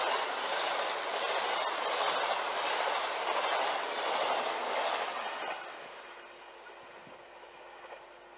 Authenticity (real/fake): real